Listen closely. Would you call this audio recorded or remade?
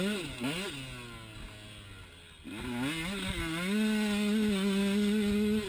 recorded